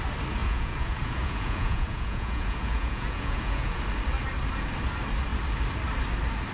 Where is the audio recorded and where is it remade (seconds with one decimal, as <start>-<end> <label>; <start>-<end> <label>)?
0.0-0.4 recorded; 0.4-3.8 remade; 3.8-6.5 recorded